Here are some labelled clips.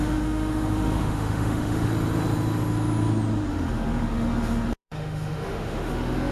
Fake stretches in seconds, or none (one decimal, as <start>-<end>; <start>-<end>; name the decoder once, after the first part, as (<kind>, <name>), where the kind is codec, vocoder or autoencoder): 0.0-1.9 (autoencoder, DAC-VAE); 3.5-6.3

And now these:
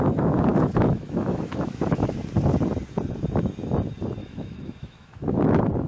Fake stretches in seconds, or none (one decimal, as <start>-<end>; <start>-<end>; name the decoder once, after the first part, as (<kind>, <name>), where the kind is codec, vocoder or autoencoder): 0.5-2.2 (autoencoder, DAC-VAE); 4.2-5.4

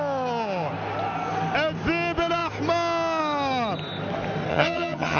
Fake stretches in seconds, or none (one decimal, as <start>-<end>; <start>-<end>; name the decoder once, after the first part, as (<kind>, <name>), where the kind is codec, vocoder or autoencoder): 4.5-5.2 (vocoder, HiFi-GAN)

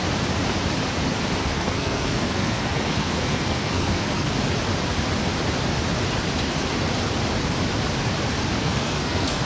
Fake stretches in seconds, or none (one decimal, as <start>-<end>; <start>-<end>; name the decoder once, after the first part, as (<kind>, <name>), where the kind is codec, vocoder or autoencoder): 1.4-4.3 (codec, SNAC); 8.6-9.4

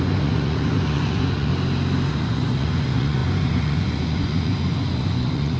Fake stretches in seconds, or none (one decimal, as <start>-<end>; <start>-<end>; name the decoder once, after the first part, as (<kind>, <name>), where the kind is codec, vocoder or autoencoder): 0.0-1.5 (vocoder, Vocos); 2.1-5.6

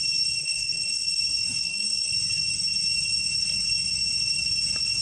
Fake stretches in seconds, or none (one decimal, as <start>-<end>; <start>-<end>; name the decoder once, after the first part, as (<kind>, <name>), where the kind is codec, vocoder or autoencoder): 0.4-1.2 (codec, SNAC); 1.6-2.1

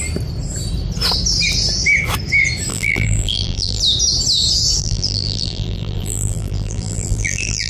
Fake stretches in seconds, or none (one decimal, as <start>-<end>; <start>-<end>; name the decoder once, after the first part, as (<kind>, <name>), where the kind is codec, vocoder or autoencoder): 2.7-3.8 (vocoder, BigVGAN v2); 4.8-7.7

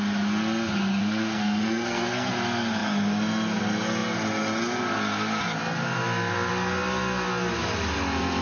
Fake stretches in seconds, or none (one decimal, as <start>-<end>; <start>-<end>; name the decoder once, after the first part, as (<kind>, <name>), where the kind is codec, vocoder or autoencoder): 1.0-2.3 (codec, SNAC)